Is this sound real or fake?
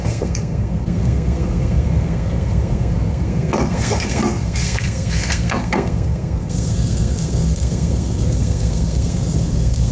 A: fake